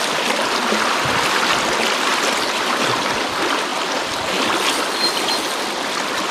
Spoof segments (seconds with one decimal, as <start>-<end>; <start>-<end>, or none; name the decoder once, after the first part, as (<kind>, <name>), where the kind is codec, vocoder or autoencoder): none